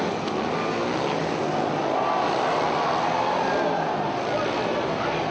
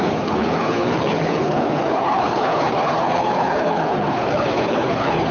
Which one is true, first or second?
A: first